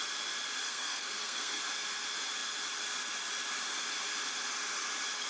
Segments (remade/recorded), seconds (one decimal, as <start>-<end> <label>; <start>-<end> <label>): 0.0-0.6 recorded; 0.6-1.6 remade; 1.6-5.3 recorded